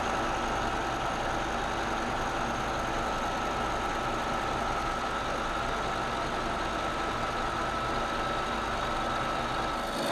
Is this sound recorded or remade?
recorded